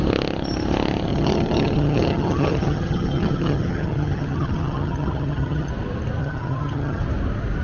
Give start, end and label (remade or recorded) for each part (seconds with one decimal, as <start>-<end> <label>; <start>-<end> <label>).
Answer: 0.0-1.1 recorded; 1.1-5.7 remade; 5.7-6.2 recorded; 6.2-7.0 remade; 7.0-7.6 recorded